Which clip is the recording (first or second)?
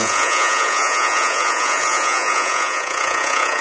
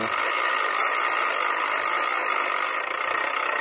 second